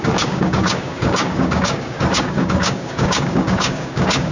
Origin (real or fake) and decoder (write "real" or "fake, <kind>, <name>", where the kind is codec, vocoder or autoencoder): fake, codec, DAC